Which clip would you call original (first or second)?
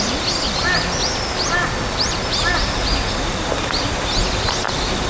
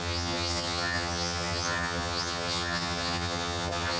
first